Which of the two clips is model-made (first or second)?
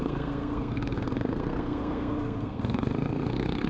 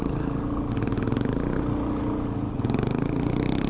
first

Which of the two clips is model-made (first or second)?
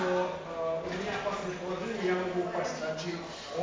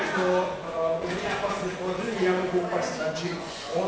second